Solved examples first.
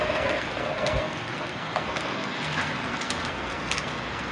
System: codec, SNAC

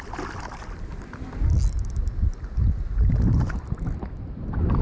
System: none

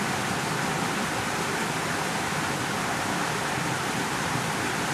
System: none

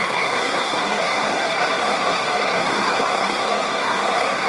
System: codec, SNAC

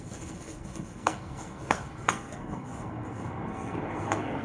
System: codec, SNAC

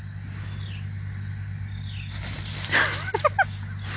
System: none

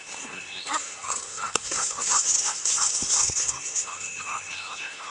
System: codec, SNAC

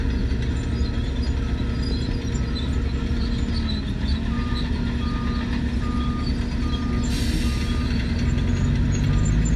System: none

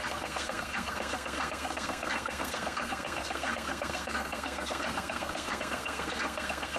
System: codec, SNAC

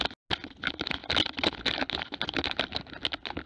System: none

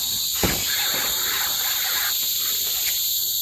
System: none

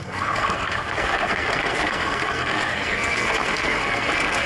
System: codec, SNAC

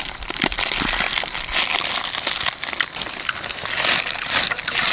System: none